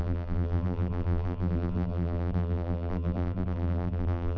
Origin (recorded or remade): remade